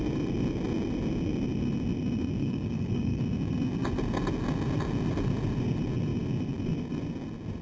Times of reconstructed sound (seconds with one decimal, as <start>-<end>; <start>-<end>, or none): 2.4-3.2